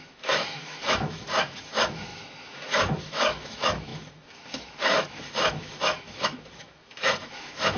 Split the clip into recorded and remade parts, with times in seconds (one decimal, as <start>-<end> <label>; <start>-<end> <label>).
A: 0.0-7.8 remade